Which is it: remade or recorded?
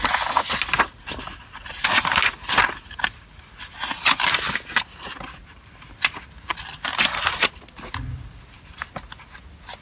recorded